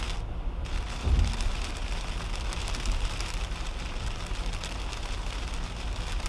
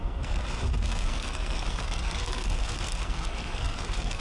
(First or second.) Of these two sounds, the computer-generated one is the second